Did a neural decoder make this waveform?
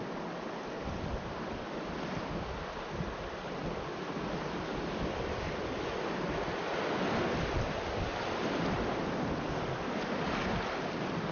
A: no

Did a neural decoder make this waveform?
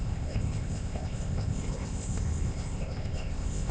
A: yes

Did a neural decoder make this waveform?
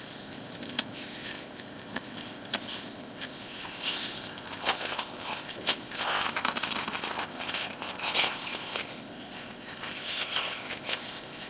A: yes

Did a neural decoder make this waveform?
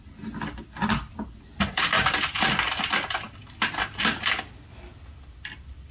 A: no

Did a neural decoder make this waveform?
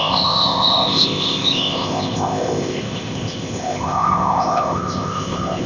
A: yes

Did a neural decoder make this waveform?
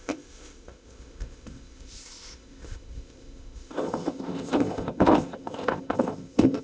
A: yes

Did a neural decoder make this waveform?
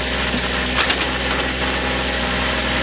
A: no